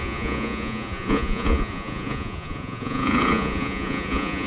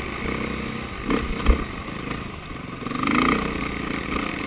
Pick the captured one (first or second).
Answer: second